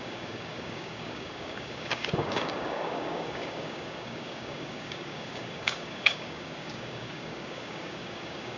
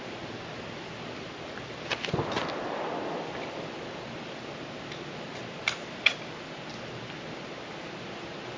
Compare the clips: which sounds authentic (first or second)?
second